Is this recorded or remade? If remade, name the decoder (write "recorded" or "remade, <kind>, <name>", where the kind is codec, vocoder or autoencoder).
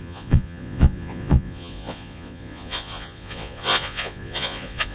remade, vocoder, Vocos